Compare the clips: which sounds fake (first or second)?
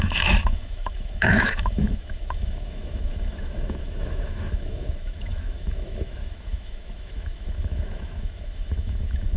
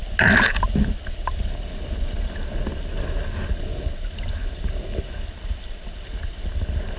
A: first